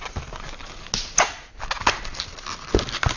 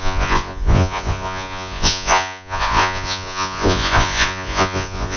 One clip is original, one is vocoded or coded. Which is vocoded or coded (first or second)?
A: second